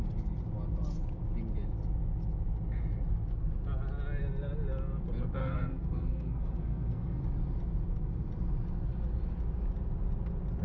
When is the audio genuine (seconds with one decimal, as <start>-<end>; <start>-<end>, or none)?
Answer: 0.0-5.4; 7.2-10.6